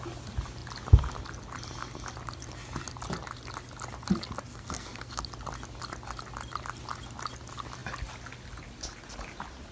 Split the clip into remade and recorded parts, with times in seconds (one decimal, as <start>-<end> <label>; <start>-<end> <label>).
0.0-4.5 recorded; 4.5-5.2 remade; 5.2-9.7 recorded